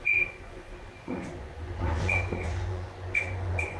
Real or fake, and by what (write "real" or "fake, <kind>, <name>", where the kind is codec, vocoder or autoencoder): fake, vocoder, Vocos